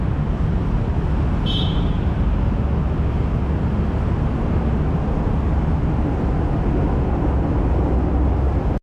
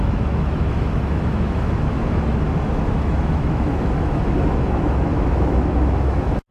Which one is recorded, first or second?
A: first